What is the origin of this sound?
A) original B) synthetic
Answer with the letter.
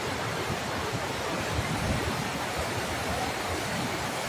B